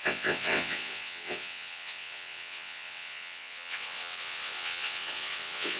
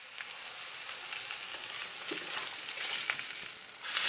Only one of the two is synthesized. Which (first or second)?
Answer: first